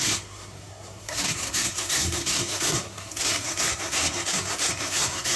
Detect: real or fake fake